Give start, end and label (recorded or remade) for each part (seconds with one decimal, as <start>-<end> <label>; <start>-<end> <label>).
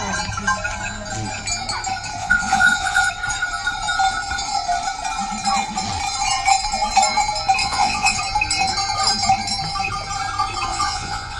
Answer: 0.0-2.2 recorded; 2.2-3.1 remade; 3.1-7.6 recorded; 7.6-8.2 remade; 8.2-10.7 recorded; 10.7-11.4 remade